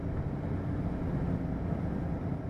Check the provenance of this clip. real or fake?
real